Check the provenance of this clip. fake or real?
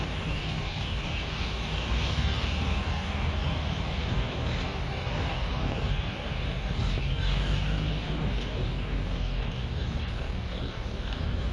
fake